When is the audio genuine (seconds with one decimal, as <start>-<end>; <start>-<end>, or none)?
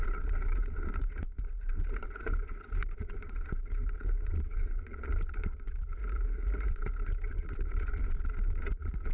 6.0-6.7